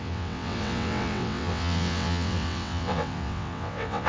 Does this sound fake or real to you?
fake